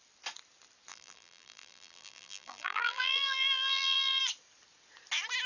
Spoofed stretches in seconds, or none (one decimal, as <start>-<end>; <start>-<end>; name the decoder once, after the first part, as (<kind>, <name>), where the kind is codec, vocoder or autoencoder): 0.9-4.2 (vocoder, BigVGAN v2)